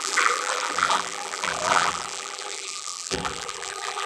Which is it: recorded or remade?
remade